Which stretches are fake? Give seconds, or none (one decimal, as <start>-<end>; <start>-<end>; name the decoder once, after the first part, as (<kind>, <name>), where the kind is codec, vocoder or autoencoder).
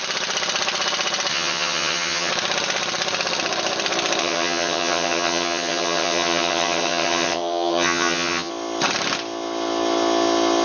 1.3-2.3 (vocoder, HiFi-GAN); 4.2-8.5